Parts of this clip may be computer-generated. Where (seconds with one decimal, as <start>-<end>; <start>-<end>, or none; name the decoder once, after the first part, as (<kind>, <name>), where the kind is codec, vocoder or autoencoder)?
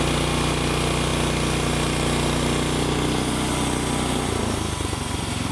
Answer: none